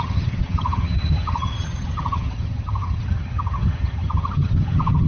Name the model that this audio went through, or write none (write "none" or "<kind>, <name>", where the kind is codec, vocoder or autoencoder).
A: vocoder, HiFi-GAN